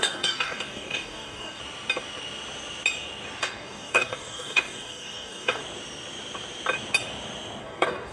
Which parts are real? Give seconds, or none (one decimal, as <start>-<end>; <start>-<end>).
1.6-3.4; 5.6-7.6